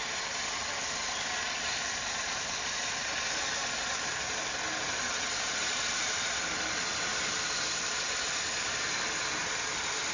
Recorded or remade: recorded